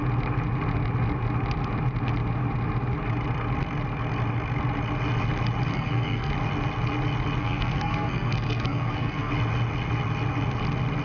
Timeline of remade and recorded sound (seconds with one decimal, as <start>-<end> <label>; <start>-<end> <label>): 0.0-5.7 recorded; 5.7-6.3 remade; 6.3-7.4 recorded; 7.4-9.3 remade; 9.3-11.0 recorded